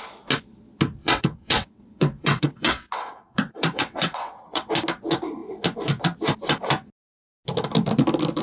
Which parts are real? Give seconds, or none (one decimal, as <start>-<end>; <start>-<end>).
0.0-1.0; 4.7-8.4